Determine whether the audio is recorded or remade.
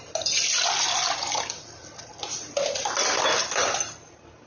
recorded